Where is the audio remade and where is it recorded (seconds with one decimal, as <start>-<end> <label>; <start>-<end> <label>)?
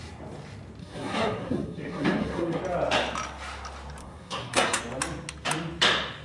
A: 0.0-0.8 recorded; 0.8-2.6 remade; 2.6-4.0 recorded; 4.0-4.8 remade; 4.8-6.2 recorded